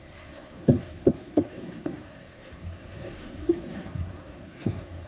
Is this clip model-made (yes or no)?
yes